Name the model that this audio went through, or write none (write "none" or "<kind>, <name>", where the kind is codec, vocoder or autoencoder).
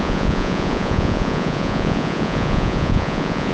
vocoder, Vocos